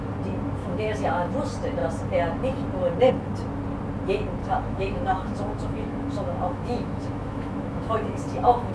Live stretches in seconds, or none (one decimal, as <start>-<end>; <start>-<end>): 0.0-0.6; 1.3-4.4

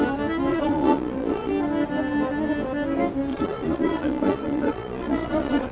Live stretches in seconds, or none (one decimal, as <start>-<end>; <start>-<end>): 0.0-0.5; 1.5-3.3

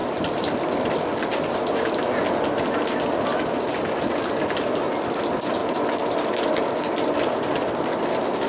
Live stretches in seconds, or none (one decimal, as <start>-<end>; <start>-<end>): 1.8-8.5

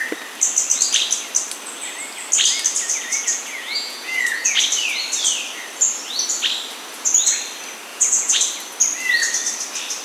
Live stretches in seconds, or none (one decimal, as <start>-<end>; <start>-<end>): 0.0-3.1; 4.6-7.9; 8.4-10.0

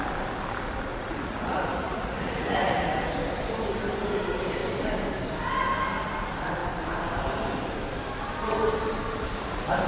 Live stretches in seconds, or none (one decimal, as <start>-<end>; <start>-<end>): 0.0-0.9; 2.9-9.9

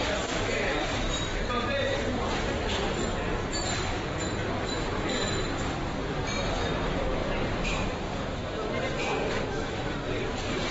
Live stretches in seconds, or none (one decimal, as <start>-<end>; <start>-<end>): none

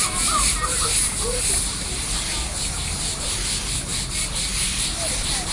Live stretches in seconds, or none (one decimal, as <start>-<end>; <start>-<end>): 0.0-5.5